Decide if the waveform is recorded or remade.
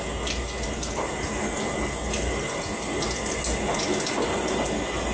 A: recorded